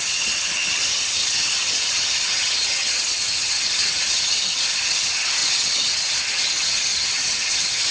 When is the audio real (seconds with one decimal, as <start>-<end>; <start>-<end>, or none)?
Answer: none